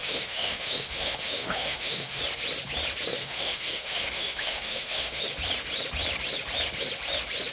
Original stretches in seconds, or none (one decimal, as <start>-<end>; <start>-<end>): 2.2-3.2; 5.2-7.5